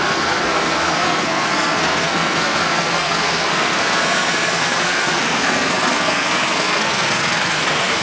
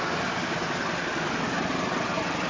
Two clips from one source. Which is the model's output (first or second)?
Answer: first